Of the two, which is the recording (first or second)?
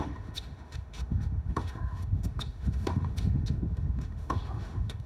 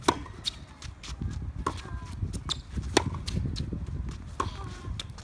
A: second